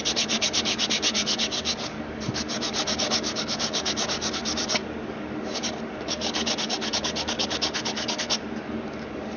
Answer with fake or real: fake